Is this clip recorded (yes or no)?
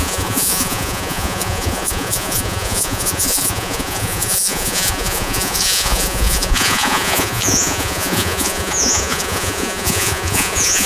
no